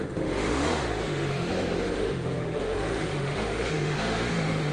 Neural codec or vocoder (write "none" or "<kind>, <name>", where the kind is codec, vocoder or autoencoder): autoencoder, DAC-VAE